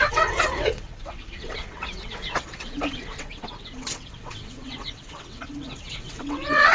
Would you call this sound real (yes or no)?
no